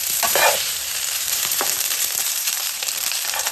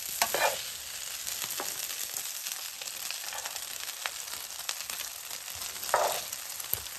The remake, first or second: first